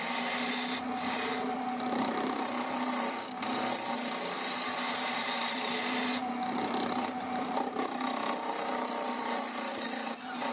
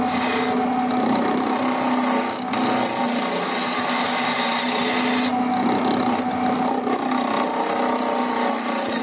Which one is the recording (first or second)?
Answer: second